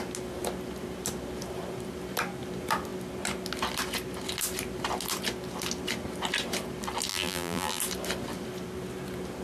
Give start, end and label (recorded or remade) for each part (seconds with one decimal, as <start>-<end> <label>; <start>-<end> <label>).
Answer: 0.0-7.1 recorded; 7.1-7.8 remade; 7.8-9.4 recorded